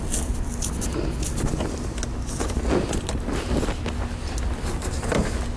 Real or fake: real